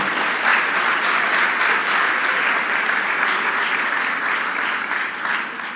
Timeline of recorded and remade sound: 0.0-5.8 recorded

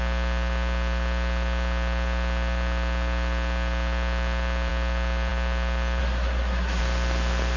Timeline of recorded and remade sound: 0.0-6.0 recorded; 6.0-6.8 remade; 6.8-7.6 recorded

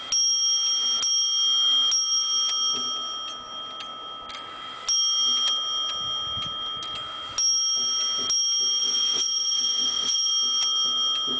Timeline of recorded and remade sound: 0.0-8.8 recorded; 8.8-10.3 remade; 10.3-11.4 recorded

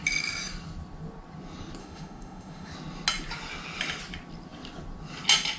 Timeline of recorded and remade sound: 0.0-1.8 recorded; 1.8-2.7 remade; 2.7-5.6 recorded

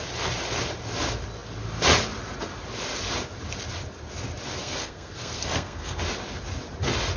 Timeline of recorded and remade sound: 0.0-4.6 recorded; 4.6-6.0 remade; 6.0-7.2 recorded

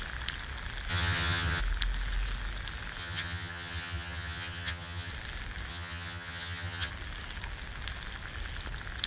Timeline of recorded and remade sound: 0.0-0.9 recorded; 0.9-1.6 remade; 1.6-3.0 recorded; 3.0-5.1 remade; 5.1-5.7 recorded; 5.7-6.9 remade; 6.9-9.1 recorded